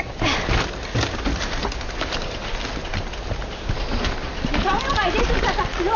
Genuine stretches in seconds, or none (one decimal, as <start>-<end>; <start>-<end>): 0.0-6.0